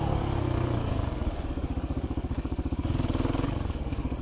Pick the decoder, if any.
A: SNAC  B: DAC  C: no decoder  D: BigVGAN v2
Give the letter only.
B